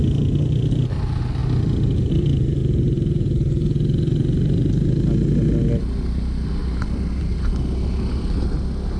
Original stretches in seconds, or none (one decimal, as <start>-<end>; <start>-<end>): 0.0-2.6; 3.5-6.6; 7.5-9.0